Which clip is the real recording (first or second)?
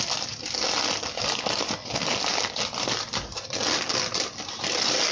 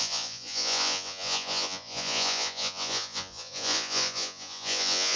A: first